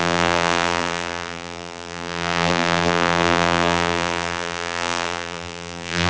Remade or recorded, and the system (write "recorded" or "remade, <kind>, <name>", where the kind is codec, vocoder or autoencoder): remade, vocoder, BigVGAN v2